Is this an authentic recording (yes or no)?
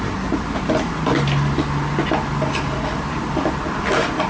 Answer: yes